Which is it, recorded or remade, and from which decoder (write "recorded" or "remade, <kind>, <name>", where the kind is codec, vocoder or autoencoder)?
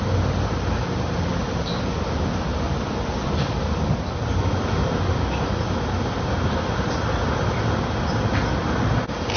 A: recorded